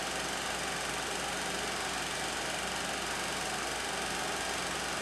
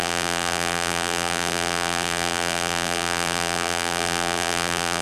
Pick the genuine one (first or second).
first